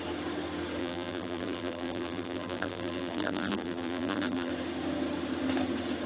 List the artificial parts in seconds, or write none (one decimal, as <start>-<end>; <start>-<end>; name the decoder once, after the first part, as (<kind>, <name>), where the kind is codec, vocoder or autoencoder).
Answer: 0.8-4.5 (vocoder, BigVGAN v2)